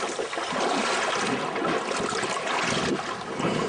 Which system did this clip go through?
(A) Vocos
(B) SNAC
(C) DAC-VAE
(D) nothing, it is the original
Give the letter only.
D